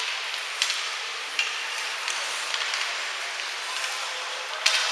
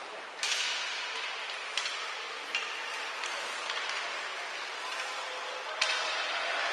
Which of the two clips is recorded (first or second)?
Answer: second